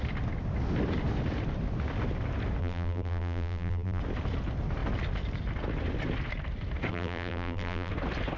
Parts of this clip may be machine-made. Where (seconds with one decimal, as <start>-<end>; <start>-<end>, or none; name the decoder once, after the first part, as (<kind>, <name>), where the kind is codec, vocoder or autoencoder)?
2.6-4.0 (vocoder, BigVGAN v2); 6.9-7.9